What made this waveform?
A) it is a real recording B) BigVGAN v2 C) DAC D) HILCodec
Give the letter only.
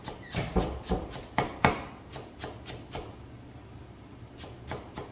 A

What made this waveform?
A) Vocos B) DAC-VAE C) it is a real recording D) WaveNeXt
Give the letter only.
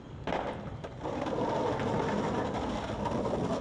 C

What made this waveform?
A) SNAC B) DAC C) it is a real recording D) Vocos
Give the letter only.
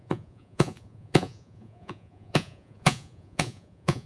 D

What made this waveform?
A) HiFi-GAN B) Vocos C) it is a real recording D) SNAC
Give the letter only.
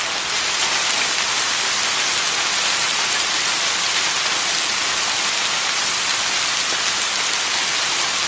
C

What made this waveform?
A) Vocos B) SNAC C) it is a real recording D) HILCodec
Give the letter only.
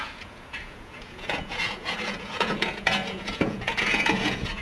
A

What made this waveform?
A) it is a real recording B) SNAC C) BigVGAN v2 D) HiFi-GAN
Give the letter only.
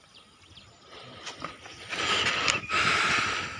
A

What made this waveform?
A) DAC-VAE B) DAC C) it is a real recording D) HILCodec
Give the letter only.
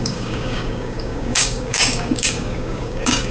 B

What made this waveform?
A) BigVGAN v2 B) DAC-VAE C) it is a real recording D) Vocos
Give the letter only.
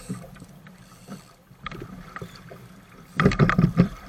A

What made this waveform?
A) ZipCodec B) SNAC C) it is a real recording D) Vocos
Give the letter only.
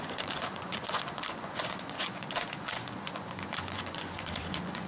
D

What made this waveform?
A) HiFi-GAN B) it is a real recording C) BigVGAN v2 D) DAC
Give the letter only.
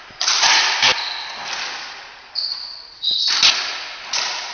B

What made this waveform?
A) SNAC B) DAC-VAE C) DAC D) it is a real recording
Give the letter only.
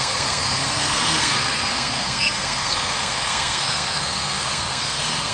A